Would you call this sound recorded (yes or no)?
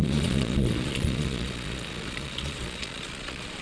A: no